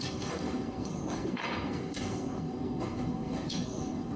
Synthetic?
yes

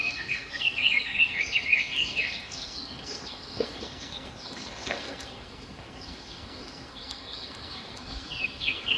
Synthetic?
yes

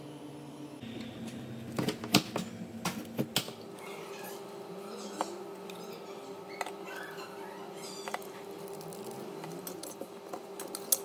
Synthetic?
no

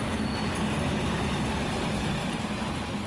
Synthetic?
no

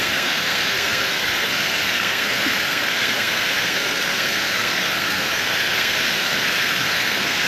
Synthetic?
yes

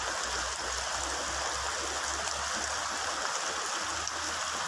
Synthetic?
no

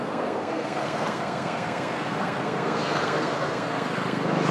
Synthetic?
yes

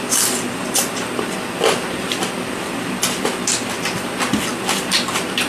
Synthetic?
no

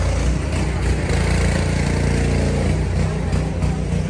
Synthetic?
no